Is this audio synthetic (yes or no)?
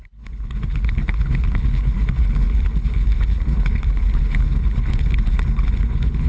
yes